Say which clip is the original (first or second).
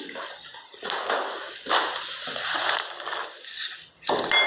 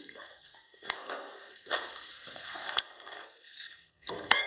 first